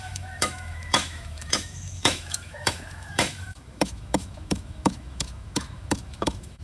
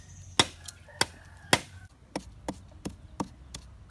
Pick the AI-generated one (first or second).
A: first